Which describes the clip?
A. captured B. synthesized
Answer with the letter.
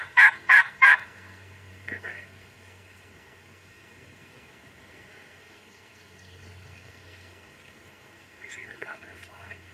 B